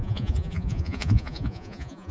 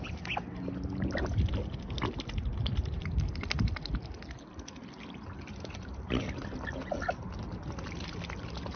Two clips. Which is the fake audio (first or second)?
first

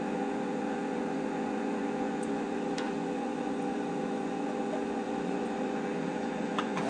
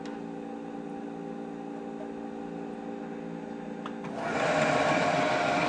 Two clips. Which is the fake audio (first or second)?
first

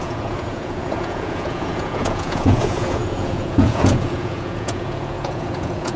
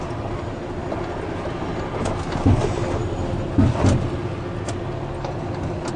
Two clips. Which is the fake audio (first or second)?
first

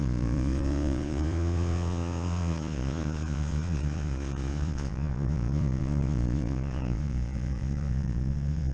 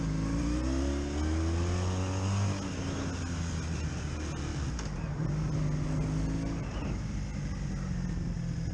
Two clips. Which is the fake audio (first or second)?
first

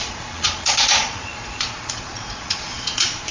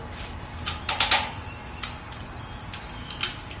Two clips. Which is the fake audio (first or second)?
first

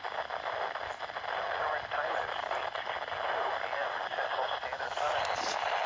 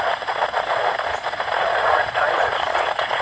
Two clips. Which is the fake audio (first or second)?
second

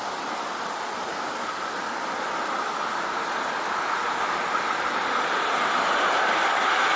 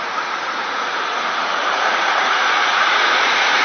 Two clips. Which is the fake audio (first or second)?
second